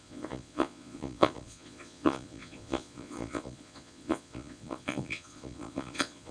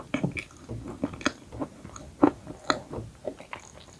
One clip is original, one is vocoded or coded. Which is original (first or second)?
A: second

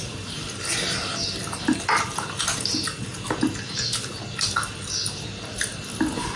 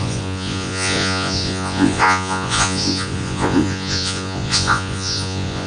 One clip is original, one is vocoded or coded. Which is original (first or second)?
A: first